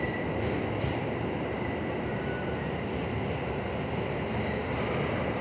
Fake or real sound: real